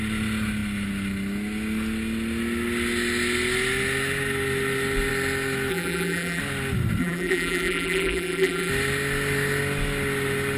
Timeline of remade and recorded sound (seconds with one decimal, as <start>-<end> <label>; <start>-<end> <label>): 0.0-5.7 recorded; 5.7-6.4 remade; 6.4-7.0 recorded; 7.0-8.7 remade; 8.7-10.6 recorded